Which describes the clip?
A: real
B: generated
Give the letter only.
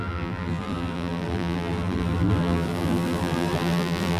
B